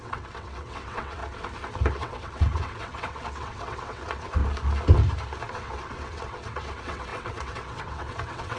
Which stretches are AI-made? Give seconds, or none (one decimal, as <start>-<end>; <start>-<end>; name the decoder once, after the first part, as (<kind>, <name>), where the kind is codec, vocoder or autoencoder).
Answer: 0.0-1.2 (vocoder, WaveNeXt); 1.9-4.4; 5.5-8.6